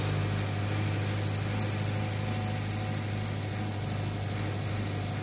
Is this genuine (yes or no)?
yes